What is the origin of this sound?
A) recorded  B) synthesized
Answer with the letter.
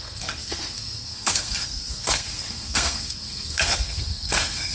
B